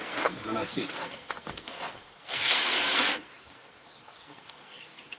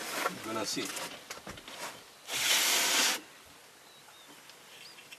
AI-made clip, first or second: first